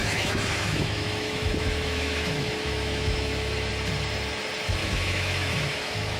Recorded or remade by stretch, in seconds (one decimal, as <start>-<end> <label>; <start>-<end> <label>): 0.0-3.7 remade; 3.7-4.8 recorded; 4.8-6.2 remade